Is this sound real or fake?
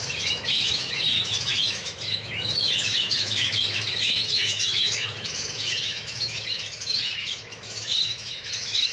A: fake